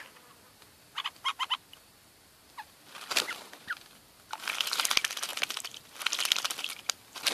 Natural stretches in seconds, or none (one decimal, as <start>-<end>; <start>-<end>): 0.0-7.3